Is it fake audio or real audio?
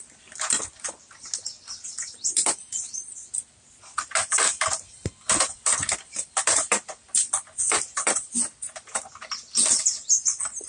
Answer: fake